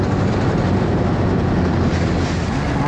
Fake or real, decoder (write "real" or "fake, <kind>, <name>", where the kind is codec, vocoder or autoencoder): real